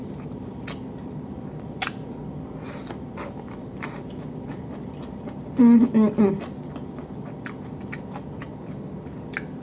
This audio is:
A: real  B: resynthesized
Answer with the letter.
A